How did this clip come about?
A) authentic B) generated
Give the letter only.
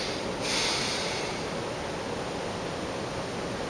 A